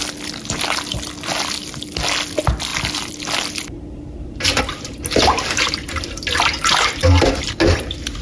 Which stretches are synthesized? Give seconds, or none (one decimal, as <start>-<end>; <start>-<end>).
none